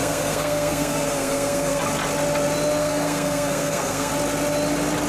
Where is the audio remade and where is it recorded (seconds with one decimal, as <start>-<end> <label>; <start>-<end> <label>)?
0.0-1.8 remade; 1.8-2.8 recorded; 2.8-4.1 remade; 4.1-5.1 recorded